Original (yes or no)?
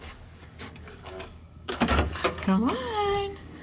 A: no